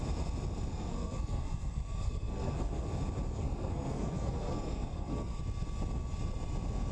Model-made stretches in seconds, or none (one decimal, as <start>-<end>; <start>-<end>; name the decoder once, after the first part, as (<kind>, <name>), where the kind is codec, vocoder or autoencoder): 0.7-2.9 (codec, SNAC); 3.3-5.4